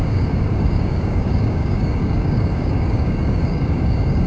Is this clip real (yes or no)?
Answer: no